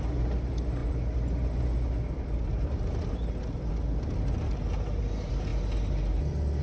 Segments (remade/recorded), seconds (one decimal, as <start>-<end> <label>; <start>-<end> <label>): 0.0-6.6 recorded